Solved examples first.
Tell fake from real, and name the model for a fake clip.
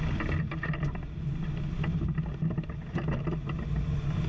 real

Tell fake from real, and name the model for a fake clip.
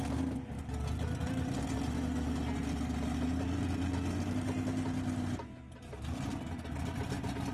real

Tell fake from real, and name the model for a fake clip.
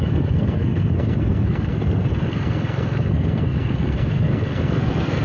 fake, codec, SNAC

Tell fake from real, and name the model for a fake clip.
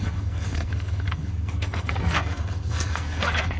fake, codec, SNAC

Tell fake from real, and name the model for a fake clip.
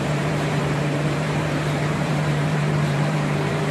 fake, vocoder, BigVGAN v2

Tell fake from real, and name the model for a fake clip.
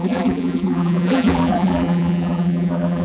fake, vocoder, BigVGAN v2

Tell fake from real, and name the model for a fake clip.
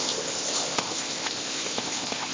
fake, codec, ZipCodec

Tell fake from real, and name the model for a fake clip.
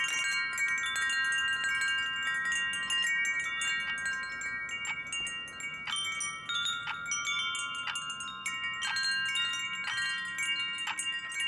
real